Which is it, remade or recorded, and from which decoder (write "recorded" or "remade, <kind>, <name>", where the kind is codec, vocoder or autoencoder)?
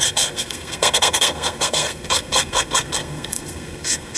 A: remade, codec, SNAC